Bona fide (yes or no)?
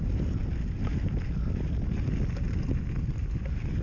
yes